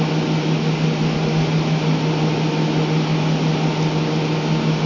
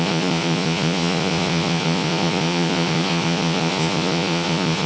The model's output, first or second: second